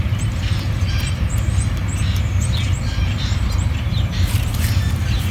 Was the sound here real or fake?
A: fake